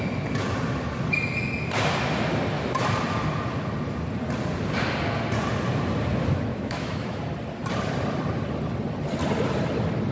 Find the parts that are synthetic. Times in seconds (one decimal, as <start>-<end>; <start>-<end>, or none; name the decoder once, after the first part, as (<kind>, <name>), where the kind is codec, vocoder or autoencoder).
6.5-7.2 (autoencoder, DAC-VAE)